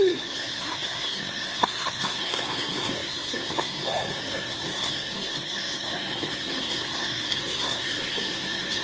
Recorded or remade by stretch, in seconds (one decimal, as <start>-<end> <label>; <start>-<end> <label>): 0.0-8.8 remade